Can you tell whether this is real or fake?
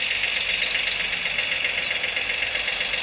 real